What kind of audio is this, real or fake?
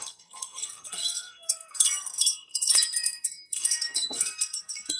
fake